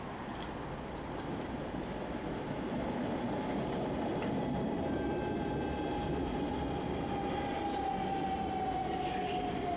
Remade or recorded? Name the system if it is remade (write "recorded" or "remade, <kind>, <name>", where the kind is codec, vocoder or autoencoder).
recorded